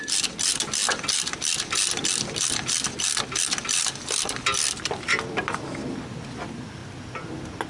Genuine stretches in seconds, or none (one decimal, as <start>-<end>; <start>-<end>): 6.8-7.7